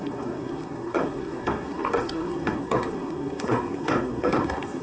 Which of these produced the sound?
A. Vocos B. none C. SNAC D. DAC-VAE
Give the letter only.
C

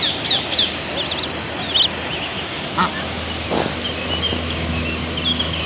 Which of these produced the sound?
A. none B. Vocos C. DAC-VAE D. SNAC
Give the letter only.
A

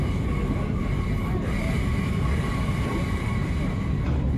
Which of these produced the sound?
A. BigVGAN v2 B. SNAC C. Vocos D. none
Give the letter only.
D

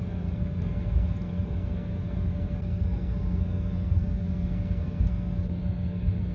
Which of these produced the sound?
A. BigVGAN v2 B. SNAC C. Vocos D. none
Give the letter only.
B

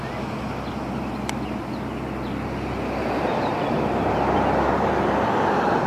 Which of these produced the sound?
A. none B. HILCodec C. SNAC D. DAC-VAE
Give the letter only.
A